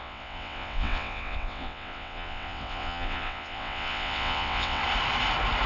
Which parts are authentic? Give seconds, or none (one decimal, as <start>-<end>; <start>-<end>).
4.8-5.7